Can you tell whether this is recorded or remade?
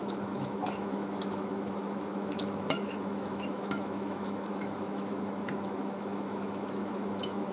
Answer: remade